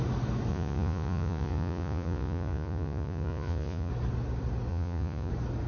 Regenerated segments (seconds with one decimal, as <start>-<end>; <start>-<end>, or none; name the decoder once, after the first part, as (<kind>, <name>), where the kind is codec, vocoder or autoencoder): 0.5-3.9 (vocoder, Vocos); 4.7-5.3